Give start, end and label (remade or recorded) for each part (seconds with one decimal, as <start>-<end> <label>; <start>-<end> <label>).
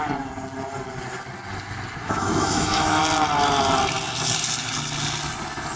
0.0-2.0 recorded; 2.0-3.0 remade; 3.0-5.8 recorded